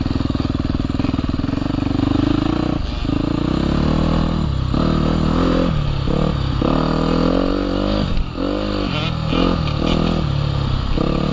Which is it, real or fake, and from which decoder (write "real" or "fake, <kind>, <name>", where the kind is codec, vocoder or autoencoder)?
real